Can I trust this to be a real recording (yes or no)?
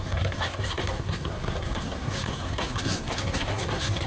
no